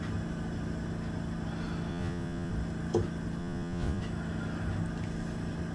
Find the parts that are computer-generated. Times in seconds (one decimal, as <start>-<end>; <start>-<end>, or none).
1.9-2.5; 3.4-4.0